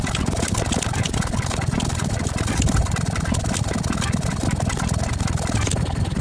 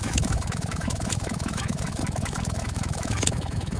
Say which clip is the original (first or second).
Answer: first